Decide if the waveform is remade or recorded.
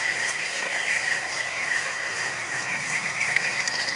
remade